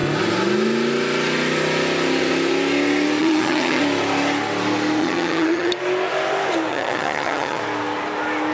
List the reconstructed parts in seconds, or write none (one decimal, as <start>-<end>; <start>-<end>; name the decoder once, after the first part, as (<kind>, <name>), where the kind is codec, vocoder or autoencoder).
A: 3.2-3.8 (vocoder, HiFi-GAN); 5.0-5.7; 6.7-7.6